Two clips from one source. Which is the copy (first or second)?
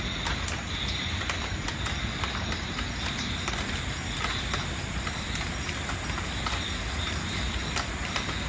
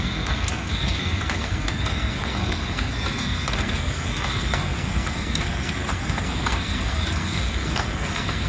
second